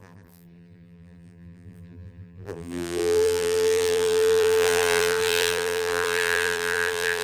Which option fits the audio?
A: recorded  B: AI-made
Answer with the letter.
B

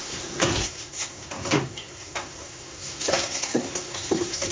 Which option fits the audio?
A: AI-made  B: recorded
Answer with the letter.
A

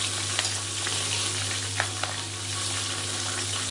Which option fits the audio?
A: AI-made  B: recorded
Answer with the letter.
B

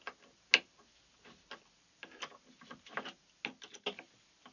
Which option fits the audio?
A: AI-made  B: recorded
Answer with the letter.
B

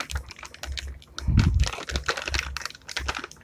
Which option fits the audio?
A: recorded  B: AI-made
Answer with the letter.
A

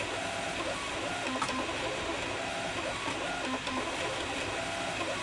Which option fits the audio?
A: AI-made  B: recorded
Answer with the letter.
B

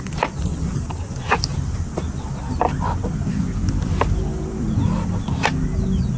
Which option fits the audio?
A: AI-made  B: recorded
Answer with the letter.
A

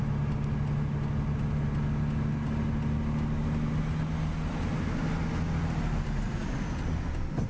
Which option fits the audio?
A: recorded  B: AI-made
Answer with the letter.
A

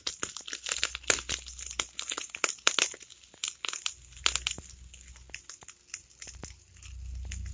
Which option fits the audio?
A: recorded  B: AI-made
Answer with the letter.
A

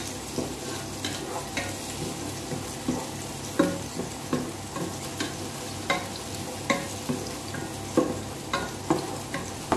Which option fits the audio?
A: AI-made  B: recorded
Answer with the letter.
B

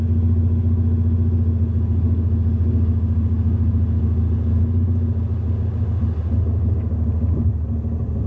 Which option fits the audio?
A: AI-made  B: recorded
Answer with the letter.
B